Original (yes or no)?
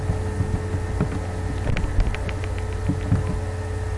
yes